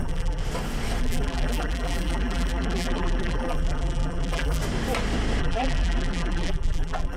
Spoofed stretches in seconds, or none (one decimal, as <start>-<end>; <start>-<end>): 0.0-0.4; 1.0-4.6; 5.4-7.2